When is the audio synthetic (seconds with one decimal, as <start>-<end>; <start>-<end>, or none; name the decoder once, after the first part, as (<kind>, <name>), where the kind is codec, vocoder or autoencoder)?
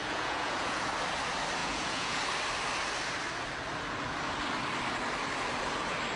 0.0-0.9 (vocoder, Vocos); 1.6-2.2